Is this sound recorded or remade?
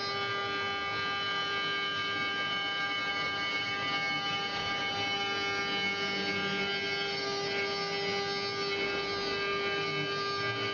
recorded